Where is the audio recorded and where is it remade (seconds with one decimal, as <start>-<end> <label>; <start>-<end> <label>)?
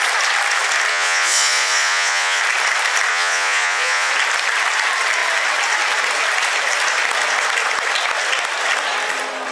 0.0-0.9 recorded; 0.9-2.4 remade; 2.4-3.1 recorded; 3.1-4.1 remade; 4.1-9.5 recorded